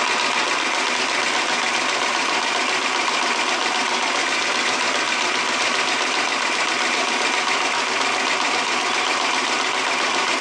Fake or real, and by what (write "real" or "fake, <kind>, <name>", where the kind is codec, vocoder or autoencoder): real